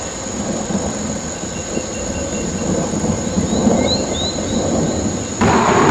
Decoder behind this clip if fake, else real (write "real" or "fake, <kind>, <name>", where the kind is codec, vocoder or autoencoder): real